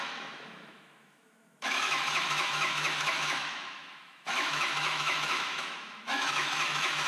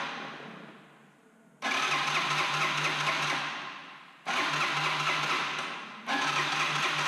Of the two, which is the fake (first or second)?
first